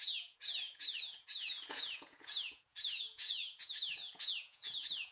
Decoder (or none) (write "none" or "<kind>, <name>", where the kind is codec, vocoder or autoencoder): vocoder, Vocos